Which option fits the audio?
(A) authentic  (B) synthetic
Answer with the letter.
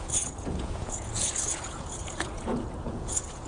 B